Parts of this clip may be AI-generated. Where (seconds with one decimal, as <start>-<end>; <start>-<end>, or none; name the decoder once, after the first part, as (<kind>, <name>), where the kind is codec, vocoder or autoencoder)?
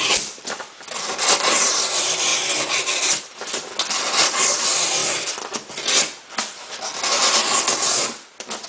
none